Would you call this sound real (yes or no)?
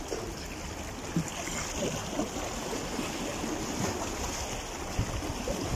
yes